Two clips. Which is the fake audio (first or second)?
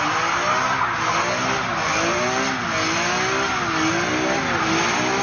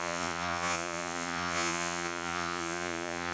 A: second